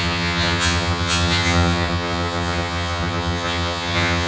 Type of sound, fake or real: fake